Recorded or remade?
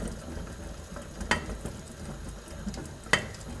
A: recorded